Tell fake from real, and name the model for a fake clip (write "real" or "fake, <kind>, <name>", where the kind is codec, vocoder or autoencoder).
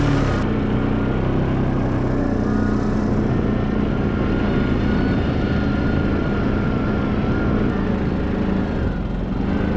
real